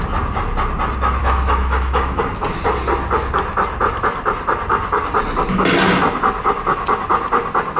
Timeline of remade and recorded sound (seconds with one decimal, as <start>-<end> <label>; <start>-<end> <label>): 0.0-1.2 recorded; 1.2-2.2 remade; 2.2-7.8 recorded